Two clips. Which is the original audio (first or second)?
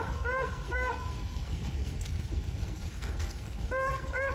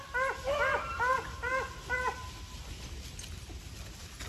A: second